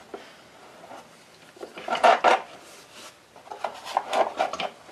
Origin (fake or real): real